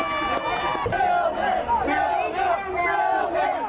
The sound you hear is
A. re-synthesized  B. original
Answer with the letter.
B